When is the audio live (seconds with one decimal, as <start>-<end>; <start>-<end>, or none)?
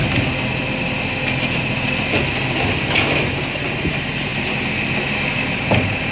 0.0-6.1